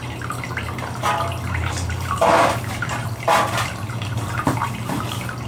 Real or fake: fake